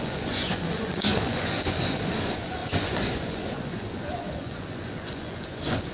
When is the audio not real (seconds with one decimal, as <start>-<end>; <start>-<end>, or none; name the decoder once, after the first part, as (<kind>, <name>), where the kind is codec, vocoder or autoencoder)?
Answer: 0.0-5.9 (vocoder, Vocos)